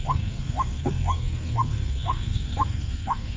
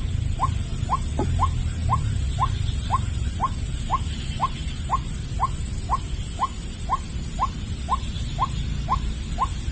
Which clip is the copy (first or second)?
first